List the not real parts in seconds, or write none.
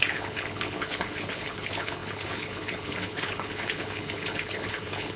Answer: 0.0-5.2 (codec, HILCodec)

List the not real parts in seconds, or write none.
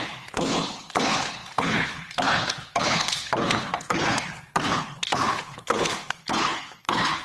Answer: 0.0-7.2 (codec, HILCodec)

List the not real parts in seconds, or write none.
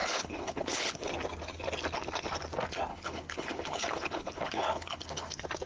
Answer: 0.0-1.1 (codec, HILCodec); 2.9-5.3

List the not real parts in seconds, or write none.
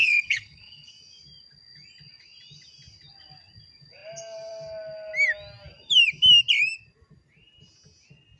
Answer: 0.0-0.9 (codec, HILCodec)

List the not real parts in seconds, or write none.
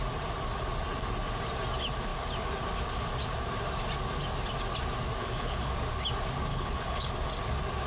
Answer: 5.2-5.7 (codec, HILCodec); 6.5-7.1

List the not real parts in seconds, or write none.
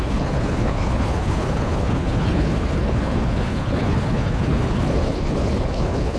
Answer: 0.0-6.2 (codec, HILCodec)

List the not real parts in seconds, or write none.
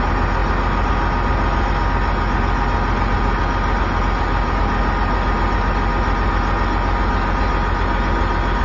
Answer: none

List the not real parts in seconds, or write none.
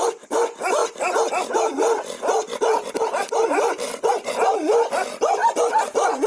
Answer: none